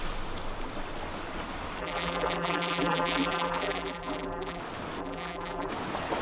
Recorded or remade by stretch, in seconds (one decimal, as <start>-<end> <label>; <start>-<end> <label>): 0.0-1.8 recorded; 1.8-4.6 remade; 4.6-5.0 recorded; 5.0-5.7 remade; 5.7-6.2 recorded